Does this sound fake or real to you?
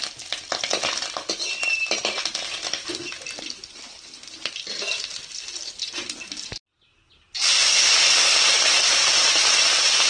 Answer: real